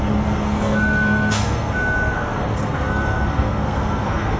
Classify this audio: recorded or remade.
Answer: remade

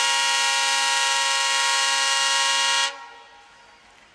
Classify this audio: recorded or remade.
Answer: recorded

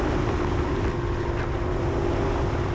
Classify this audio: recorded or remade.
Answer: recorded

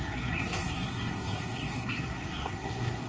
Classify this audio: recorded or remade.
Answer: remade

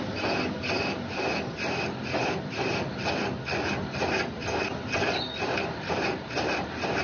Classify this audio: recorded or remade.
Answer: recorded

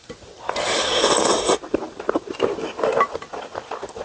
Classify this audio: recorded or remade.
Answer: remade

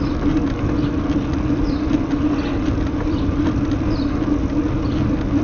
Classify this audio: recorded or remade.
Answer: recorded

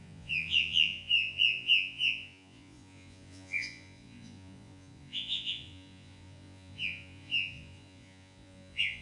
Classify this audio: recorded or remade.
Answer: remade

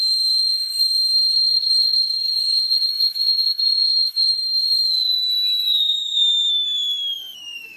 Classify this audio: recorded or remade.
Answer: remade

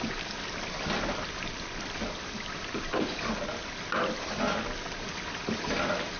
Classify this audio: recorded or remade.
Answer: recorded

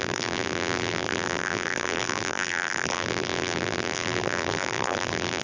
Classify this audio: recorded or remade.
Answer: remade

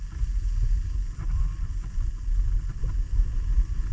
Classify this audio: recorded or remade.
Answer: recorded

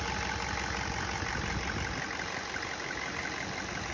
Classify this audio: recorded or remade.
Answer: recorded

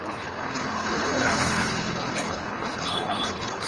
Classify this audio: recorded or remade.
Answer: remade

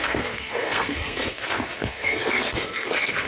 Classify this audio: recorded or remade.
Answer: remade